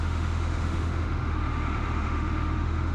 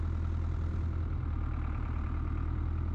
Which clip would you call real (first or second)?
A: second